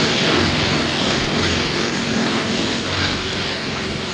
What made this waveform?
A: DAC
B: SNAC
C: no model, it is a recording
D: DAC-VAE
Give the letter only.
A